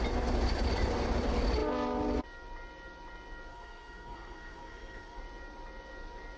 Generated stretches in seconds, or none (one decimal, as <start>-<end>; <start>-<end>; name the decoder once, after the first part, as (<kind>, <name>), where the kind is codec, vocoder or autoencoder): 3.5-5.2 (codec, SNAC)